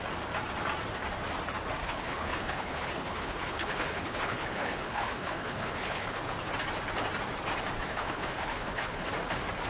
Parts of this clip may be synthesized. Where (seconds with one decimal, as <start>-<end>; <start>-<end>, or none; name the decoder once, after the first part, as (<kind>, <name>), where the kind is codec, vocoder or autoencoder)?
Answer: 1.8-6.2 (codec, HILCodec); 7.9-9.1

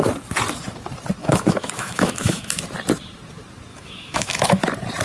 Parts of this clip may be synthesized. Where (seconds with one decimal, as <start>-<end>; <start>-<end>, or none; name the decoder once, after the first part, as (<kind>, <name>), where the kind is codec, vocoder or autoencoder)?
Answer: 1.2-2.6 (autoencoder, DAC-VAE); 3.7-4.6

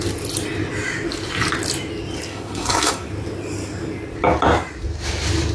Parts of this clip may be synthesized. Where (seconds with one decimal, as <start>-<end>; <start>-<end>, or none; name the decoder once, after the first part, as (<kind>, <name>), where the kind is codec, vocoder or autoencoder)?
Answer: 2.3-3.1 (codec, SNAC)

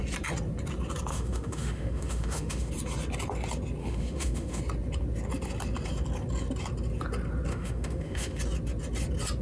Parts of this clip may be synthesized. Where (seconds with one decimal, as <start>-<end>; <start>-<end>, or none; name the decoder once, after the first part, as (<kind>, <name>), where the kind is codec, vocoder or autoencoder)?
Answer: 1.1-2.7 (autoencoder, DAC-VAE); 3.8-4.6; 7.5-8.4

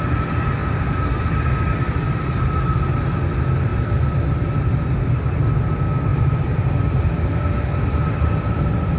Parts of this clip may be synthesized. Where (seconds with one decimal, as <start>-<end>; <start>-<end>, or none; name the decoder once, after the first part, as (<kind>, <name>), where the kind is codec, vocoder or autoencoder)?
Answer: 3.7-5.5 (vocoder, BigVGAN v2); 6.1-7.9